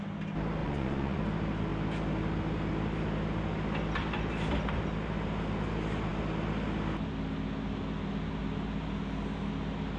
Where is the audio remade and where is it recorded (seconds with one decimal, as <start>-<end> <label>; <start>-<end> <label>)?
0.0-0.6 recorded; 0.6-1.2 remade; 1.2-10.0 recorded